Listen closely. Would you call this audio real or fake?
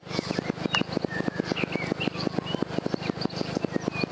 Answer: real